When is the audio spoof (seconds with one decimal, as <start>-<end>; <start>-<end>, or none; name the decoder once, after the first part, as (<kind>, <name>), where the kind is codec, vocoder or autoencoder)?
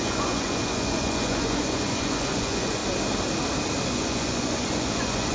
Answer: 0.0-2.8 (vocoder, Vocos); 3.9-5.3